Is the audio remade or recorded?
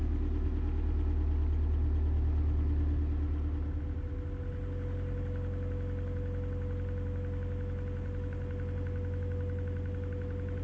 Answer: recorded